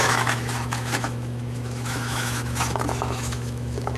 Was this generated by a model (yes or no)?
yes